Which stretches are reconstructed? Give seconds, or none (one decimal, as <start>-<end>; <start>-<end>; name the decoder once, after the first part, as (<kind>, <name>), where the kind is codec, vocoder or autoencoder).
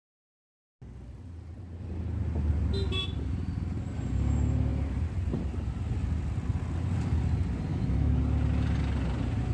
7.7-8.2 (autoencoder, DAC-VAE)